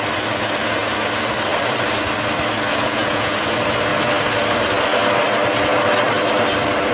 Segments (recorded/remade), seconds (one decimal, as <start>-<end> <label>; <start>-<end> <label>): 0.0-2.7 recorded; 2.7-3.4 remade; 3.4-6.9 recorded